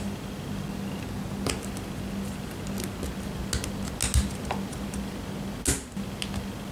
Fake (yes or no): no